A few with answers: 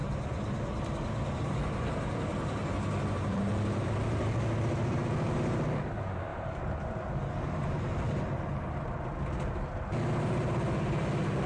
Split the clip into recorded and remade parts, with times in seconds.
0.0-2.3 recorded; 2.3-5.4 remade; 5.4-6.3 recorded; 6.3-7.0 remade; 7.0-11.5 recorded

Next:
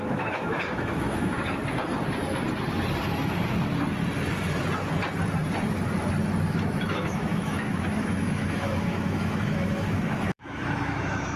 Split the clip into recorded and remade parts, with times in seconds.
0.0-1.6 remade; 1.6-6.6 recorded; 6.6-11.4 remade

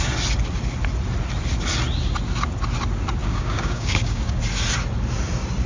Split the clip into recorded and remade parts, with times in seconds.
0.0-3.2 recorded; 3.2-4.4 remade; 4.4-5.7 recorded

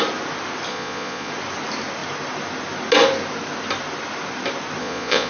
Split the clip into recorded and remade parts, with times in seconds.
0.0-0.7 recorded; 0.7-1.3 remade; 1.3-4.8 recorded; 4.8-5.3 remade

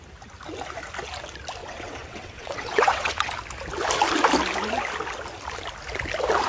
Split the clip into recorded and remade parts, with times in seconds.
0.0-1.6 recorded; 1.6-3.3 remade; 3.3-6.5 recorded

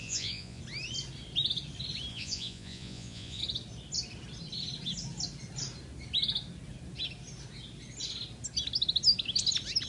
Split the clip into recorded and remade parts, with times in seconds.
0.0-0.6 remade; 0.6-2.1 recorded; 2.1-3.4 remade; 3.4-9.9 recorded